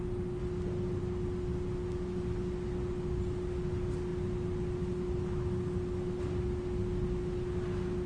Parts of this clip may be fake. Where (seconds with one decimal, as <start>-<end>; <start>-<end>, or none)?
none